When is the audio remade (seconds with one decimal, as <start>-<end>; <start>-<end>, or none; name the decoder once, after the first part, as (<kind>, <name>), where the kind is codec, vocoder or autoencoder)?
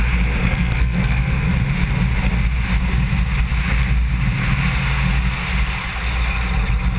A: 0.4-1.5 (codec, SNAC)